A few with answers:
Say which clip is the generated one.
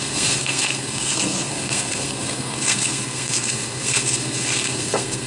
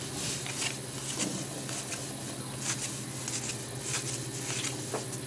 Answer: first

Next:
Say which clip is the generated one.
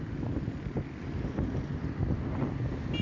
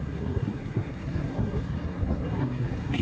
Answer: second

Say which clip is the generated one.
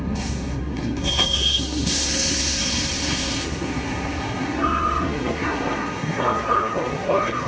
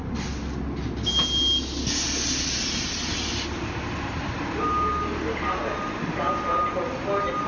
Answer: first